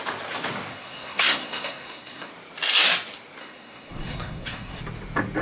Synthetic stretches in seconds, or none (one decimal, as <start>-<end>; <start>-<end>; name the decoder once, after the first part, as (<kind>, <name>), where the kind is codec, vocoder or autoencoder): 0.7-2.3 (codec, SNAC); 3.4-4.8